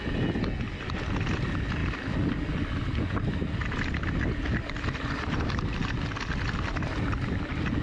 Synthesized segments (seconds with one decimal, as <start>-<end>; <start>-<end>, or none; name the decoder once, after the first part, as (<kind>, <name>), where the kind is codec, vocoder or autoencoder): none